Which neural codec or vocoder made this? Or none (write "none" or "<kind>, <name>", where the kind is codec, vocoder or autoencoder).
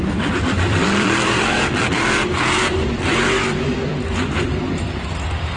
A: vocoder, BigVGAN v2